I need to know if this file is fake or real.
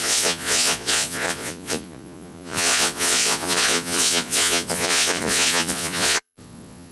fake